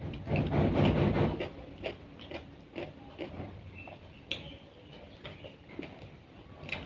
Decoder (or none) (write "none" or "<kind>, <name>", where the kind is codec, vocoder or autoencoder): none